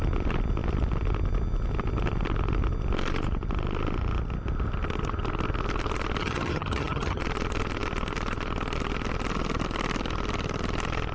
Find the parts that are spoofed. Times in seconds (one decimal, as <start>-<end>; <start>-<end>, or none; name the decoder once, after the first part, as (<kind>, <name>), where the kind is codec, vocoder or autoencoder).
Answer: 6.2-7.2 (vocoder, HiFi-GAN)